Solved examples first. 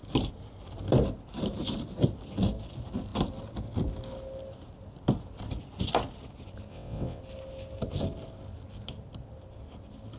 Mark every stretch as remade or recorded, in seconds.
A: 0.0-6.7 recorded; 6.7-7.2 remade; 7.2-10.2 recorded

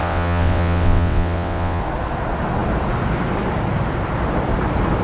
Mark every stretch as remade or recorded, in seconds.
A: 0.0-1.8 remade; 1.8-5.0 recorded

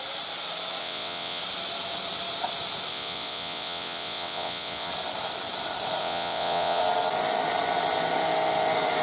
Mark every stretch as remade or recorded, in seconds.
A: 0.0-0.8 recorded; 0.8-1.4 remade; 1.4-2.9 recorded; 2.9-4.9 remade; 4.9-6.0 recorded; 6.0-6.8 remade; 6.8-9.0 recorded

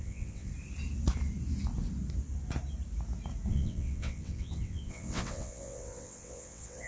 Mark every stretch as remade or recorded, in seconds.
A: 0.0-0.5 remade; 0.5-3.5 recorded; 3.5-6.9 remade

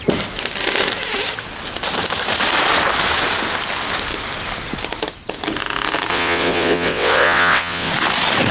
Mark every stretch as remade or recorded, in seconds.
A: 0.0-6.1 recorded; 6.1-7.9 remade; 7.9-8.5 recorded

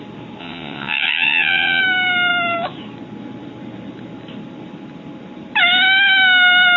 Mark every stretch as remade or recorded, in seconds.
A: 0.0-0.4 recorded; 0.4-1.8 remade; 1.8-6.8 recorded

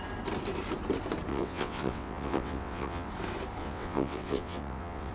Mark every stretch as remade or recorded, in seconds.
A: 0.0-1.3 recorded; 1.3-3.1 remade; 3.1-3.6 recorded; 3.6-5.1 remade

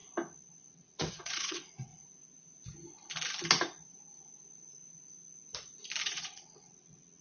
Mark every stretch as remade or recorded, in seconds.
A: 0.0-0.7 recorded; 0.7-1.9 remade; 1.9-6.0 recorded; 6.0-7.2 remade